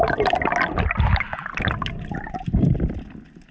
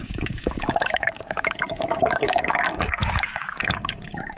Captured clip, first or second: first